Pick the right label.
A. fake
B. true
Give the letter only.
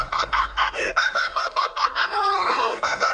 A